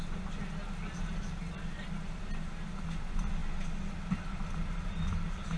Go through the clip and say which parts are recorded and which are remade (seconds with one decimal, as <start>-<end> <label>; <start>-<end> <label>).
0.0-0.4 recorded; 0.4-1.6 remade; 1.6-5.6 recorded